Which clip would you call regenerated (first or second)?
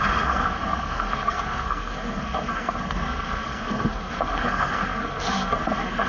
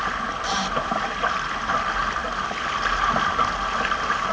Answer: first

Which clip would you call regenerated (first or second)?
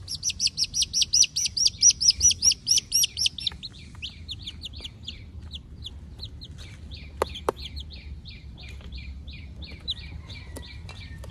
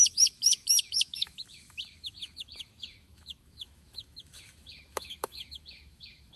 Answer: second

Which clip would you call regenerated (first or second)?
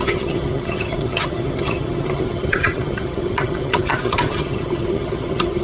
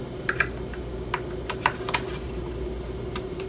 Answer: first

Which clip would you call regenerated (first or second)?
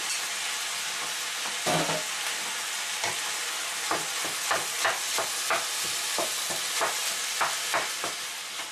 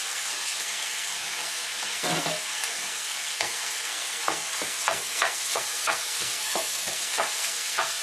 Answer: second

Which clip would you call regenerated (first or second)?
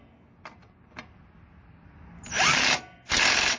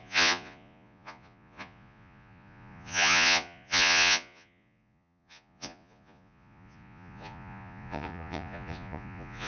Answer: second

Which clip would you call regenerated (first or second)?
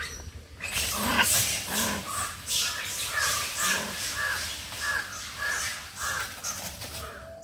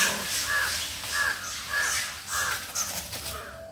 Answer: first